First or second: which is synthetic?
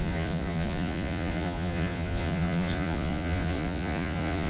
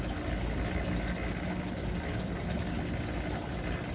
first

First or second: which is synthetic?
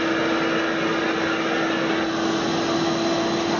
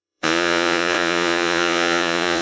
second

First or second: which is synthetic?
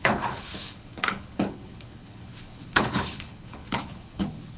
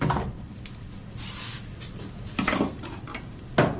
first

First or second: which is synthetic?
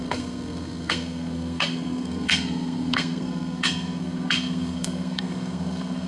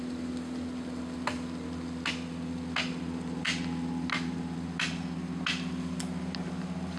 first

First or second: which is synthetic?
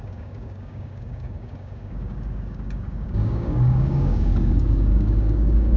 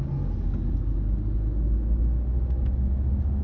first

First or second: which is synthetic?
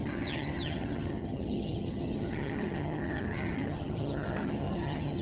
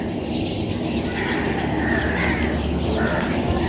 first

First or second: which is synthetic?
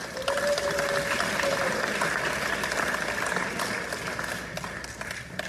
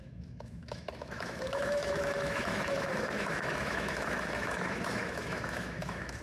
second